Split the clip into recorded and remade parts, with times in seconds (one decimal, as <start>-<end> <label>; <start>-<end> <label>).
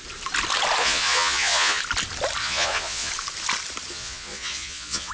0.0-0.8 recorded; 0.8-1.8 remade; 1.8-2.4 recorded; 2.4-3.1 remade; 3.1-3.9 recorded; 3.9-5.1 remade